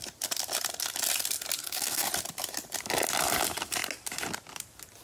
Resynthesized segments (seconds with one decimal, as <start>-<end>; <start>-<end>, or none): 1.6-2.1